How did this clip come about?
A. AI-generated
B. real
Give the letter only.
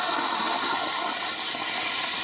B